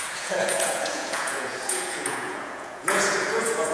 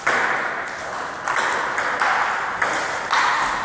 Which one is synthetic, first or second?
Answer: first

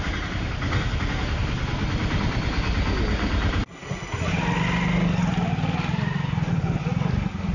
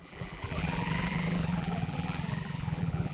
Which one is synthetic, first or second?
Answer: second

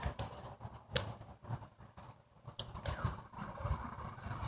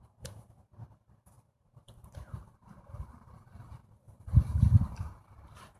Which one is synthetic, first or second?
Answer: second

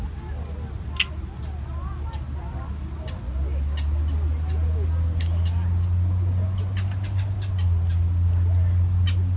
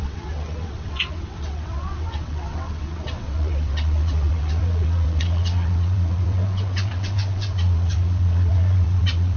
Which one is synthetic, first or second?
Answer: second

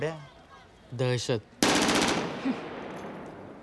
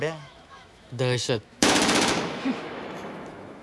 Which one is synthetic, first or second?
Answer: second